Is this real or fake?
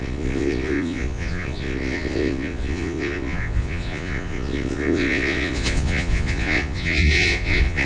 fake